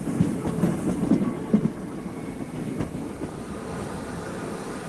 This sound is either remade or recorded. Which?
recorded